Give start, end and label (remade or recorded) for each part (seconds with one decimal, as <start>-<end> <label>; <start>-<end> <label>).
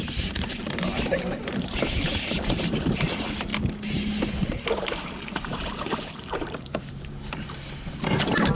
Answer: 0.0-3.5 remade; 3.5-4.8 recorded; 4.8-8.5 remade